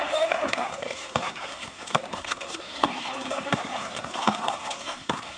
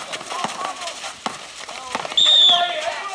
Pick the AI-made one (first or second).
first